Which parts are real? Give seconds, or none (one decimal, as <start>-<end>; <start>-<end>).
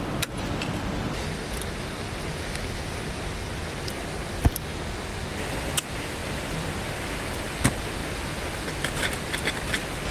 0.0-10.1